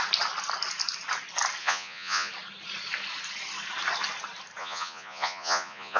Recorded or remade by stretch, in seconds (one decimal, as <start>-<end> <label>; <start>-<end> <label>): 0.0-1.6 recorded; 1.6-2.3 remade; 2.3-4.6 recorded; 4.6-6.0 remade